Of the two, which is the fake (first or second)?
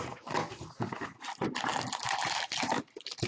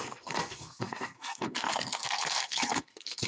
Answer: second